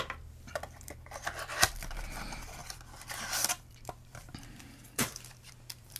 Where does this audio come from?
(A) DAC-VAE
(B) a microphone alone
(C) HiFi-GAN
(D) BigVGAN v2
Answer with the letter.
D